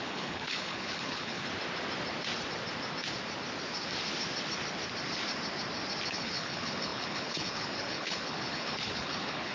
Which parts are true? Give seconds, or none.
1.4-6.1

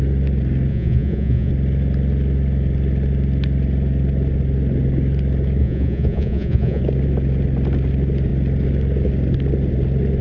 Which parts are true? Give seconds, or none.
0.0-0.7; 1.5-5.6; 6.8-10.2